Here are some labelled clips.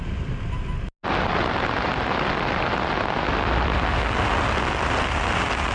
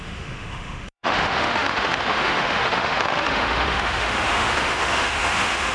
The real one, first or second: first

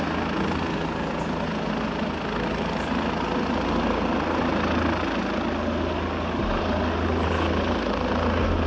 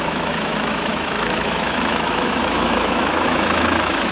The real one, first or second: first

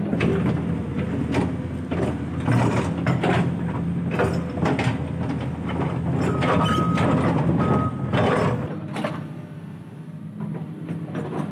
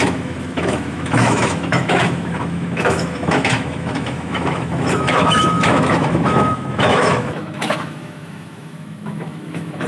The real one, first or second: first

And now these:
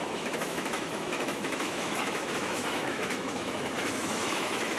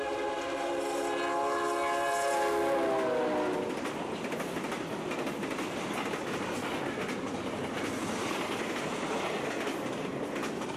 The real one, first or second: second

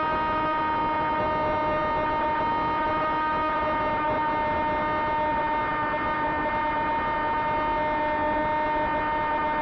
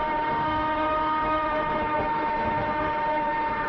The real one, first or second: first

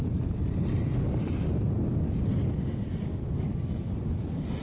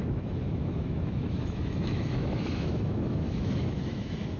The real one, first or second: first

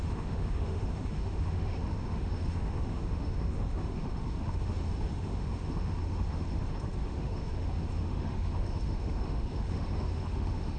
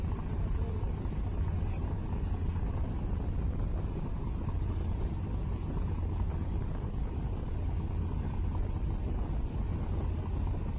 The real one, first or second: second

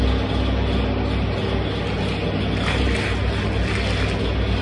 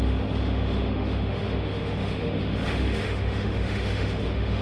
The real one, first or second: first